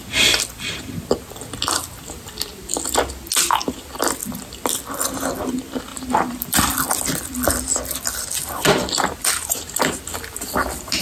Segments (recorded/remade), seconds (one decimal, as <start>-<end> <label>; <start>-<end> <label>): 0.0-5.9 recorded; 5.9-7.5 remade; 7.5-11.0 recorded

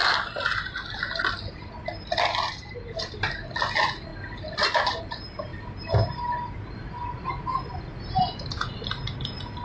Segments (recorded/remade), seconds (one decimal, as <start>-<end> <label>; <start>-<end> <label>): 0.0-9.6 recorded

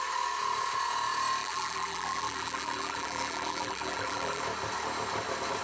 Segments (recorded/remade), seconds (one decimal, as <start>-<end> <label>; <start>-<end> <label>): 0.0-1.4 recorded; 1.4-4.4 remade; 4.4-5.6 recorded

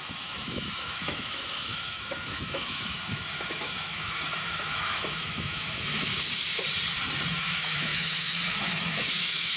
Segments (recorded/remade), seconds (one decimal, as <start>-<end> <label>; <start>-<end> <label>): 0.0-6.1 remade; 6.1-7.3 recorded; 7.3-9.6 remade

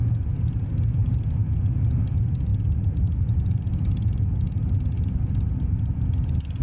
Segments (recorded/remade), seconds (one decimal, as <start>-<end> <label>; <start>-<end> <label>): 0.0-2.5 recorded; 2.5-6.6 remade

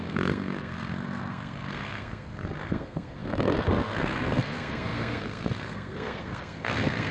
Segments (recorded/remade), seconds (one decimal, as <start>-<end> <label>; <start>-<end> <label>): 0.0-7.1 remade

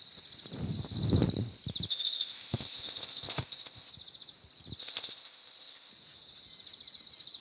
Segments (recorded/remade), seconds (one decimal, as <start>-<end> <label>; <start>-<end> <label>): 0.0-1.9 recorded; 1.9-3.9 remade; 3.9-4.8 recorded; 4.8-5.9 remade; 5.9-7.4 recorded

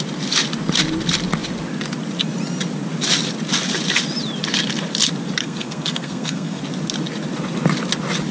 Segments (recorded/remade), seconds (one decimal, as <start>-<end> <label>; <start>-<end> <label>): 0.0-5.4 recorded; 5.4-6.6 remade; 6.6-8.3 recorded